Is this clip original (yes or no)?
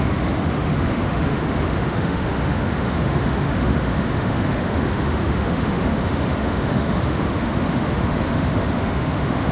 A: no